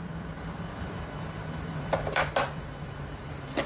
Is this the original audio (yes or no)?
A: no